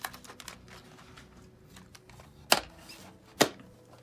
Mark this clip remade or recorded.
recorded